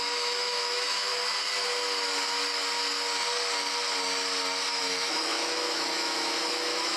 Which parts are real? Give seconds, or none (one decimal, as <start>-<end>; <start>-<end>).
1.1-4.8

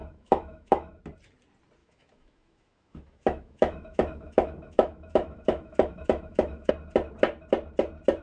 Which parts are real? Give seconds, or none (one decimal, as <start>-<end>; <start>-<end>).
1.0-1.8; 6.7-8.2

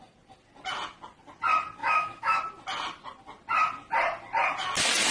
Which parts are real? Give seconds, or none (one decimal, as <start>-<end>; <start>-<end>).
0.0-1.8; 2.4-5.1

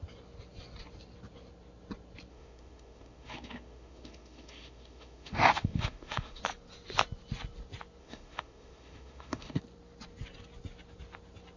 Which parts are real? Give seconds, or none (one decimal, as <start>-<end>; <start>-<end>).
0.0-2.3; 6.4-8.0; 9.6-11.6

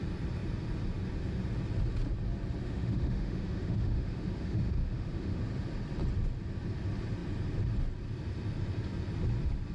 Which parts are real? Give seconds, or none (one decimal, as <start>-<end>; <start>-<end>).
0.0-2.6; 5.4-9.7

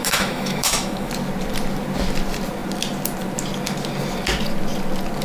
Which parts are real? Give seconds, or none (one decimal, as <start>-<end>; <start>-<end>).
1.1-5.2

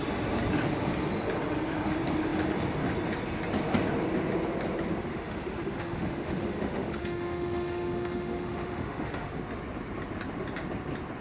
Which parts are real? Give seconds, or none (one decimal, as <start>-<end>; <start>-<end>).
0.0-5.1; 9.4-11.2